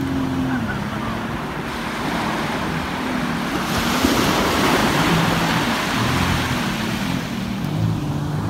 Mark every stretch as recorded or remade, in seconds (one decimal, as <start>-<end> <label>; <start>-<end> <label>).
0.0-8.5 recorded